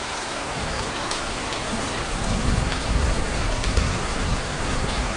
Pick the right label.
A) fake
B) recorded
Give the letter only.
A